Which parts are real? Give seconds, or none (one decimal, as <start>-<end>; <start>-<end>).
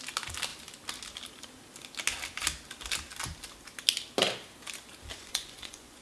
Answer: 0.0-5.1